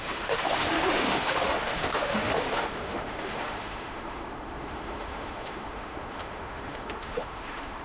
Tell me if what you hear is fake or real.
fake